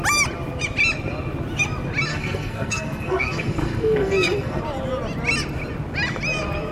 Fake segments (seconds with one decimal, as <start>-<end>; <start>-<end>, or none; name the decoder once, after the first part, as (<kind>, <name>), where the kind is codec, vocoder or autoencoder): 2.1-4.6 (codec, SNAC)